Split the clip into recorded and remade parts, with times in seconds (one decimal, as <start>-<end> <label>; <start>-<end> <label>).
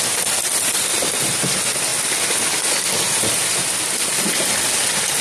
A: 0.0-5.2 recorded